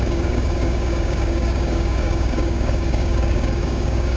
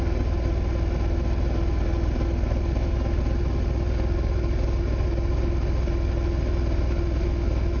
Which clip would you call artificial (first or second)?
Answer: first